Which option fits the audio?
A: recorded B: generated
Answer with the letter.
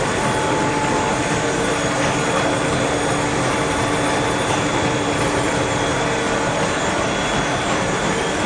A